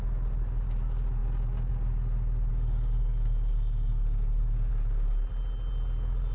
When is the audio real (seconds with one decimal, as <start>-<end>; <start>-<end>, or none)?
0.0-2.5; 4.7-6.3